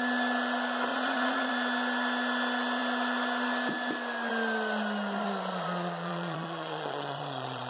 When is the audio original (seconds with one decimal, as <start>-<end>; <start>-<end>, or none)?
0.0-0.9; 1.5-5.2